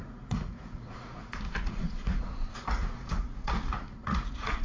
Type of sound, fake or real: fake